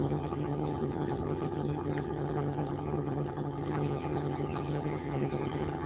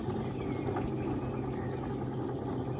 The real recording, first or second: second